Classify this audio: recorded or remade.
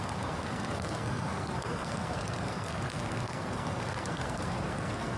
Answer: remade